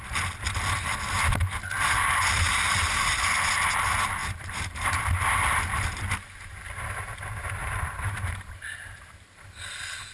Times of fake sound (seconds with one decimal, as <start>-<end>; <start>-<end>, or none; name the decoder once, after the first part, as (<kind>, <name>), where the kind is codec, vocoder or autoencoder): 4.2-5.0 (vocoder, BigVGAN v2); 7.6-9.4